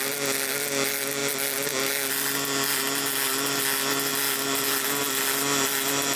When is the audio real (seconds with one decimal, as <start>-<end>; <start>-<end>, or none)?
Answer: 0.0-6.2